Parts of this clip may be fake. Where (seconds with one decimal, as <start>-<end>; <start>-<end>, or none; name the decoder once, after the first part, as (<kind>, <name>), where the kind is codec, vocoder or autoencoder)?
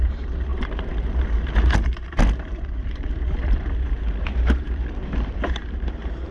0.0-6.3 (vocoder, BigVGAN v2)